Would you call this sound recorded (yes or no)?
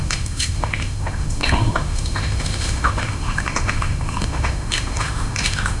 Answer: no